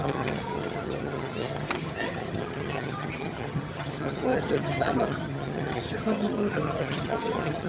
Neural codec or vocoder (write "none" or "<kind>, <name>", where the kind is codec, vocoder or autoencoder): vocoder, HiFi-GAN